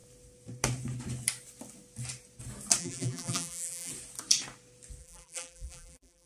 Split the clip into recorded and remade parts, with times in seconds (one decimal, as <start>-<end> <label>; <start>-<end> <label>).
0.0-2.8 recorded; 2.8-3.9 remade; 3.9-5.0 recorded; 5.0-6.3 remade